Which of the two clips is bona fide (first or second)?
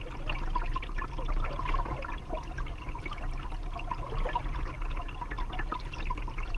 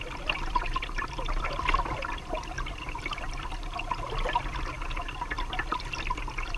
first